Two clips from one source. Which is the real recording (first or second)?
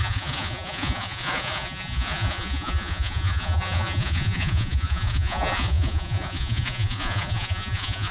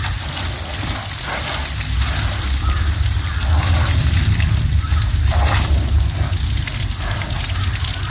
second